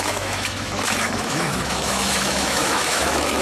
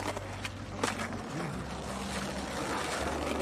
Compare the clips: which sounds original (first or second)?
second